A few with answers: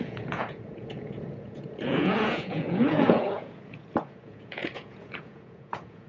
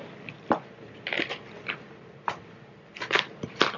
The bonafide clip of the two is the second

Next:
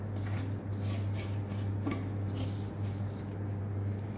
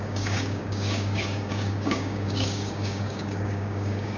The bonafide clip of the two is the first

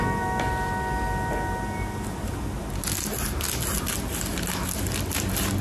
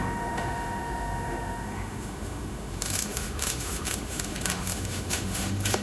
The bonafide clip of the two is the first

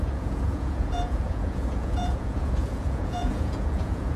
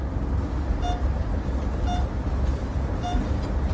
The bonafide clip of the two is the second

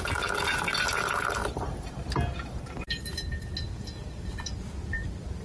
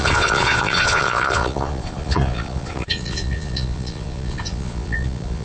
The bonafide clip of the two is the first